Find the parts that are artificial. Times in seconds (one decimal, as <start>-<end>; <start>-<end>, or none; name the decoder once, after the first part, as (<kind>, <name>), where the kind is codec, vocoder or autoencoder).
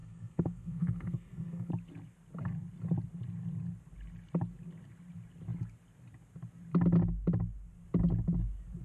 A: 0.0-1.7 (codec, SNAC)